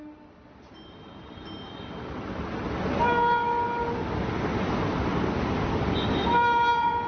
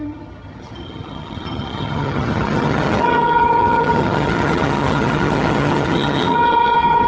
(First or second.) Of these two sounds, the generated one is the second